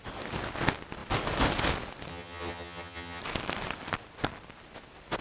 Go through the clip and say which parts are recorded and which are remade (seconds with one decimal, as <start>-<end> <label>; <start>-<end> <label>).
0.0-2.1 recorded; 2.1-3.2 remade; 3.2-5.2 recorded